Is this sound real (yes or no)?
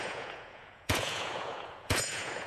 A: no